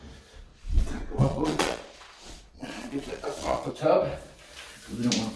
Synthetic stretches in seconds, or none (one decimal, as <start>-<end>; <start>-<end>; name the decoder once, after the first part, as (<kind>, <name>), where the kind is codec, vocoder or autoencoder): 0.5-3.7 (vocoder, Vocos)